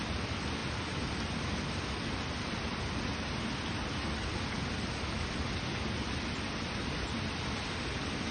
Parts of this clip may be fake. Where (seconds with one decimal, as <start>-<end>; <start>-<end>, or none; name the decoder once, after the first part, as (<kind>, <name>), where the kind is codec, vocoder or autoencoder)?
none